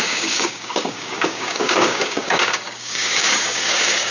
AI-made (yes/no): yes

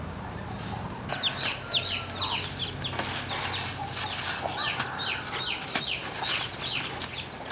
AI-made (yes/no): no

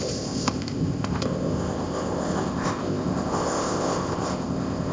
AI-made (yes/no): yes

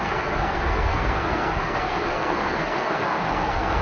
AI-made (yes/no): yes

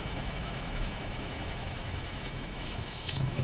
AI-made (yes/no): yes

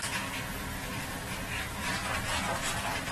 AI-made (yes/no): no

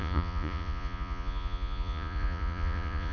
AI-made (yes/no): yes